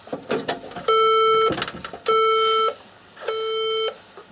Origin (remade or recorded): recorded